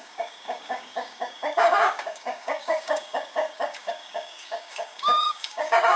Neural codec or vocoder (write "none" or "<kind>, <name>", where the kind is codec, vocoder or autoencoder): codec, DAC